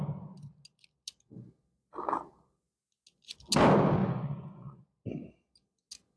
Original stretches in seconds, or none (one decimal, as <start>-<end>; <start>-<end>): 0.0-4.0; 4.8-6.2